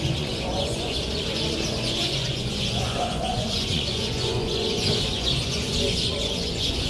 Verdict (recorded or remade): remade